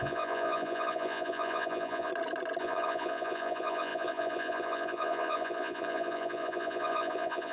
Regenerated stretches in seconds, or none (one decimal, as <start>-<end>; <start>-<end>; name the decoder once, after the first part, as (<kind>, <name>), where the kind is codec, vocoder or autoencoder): 0.0-2.1 (vocoder, Vocos); 2.6-7.5